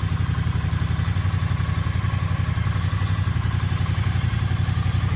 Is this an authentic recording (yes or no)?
yes